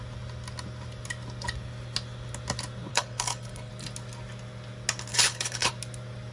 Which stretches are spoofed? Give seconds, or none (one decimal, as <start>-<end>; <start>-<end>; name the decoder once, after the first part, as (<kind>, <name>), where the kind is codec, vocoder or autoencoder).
2.9-3.7 (codec, HILCodec); 5.1-5.7